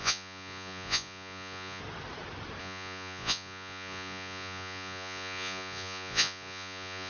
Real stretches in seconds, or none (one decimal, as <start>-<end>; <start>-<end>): 1.8-2.6